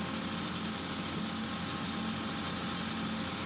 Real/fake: real